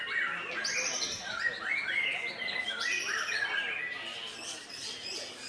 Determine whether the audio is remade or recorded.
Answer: recorded